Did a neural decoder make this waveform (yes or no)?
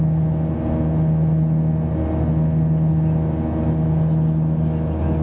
no